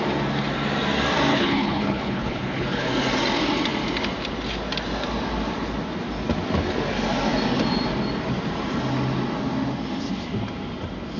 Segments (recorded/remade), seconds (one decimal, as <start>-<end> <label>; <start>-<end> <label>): 0.0-1.3 recorded; 1.3-2.9 remade; 2.9-11.2 recorded